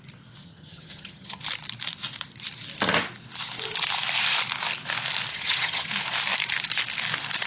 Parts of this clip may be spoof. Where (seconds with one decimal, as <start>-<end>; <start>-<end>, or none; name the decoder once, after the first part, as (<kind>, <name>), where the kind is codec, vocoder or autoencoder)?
0.4-1.4 (vocoder, HiFi-GAN); 5.3-5.9